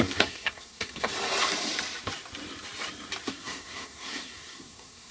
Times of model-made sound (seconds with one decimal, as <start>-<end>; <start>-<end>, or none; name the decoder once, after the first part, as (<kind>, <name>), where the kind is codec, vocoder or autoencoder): 0.0-1.1 (codec, SNAC); 3.3-5.1